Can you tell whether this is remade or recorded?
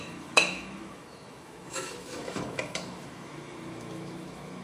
remade